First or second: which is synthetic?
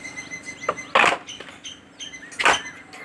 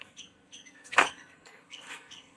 second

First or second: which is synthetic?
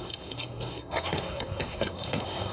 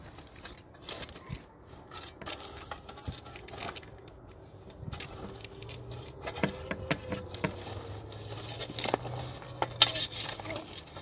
first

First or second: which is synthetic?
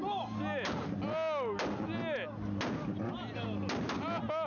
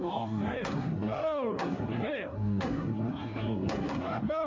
second